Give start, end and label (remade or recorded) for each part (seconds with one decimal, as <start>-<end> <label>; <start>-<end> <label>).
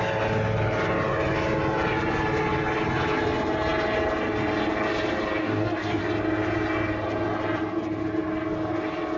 0.0-5.4 recorded; 5.4-6.0 remade; 6.0-9.2 recorded